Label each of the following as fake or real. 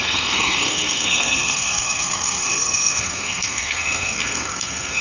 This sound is fake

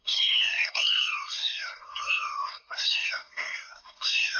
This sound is fake